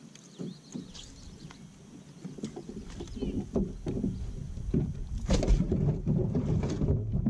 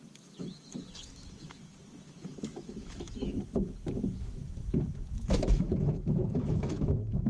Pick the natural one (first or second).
first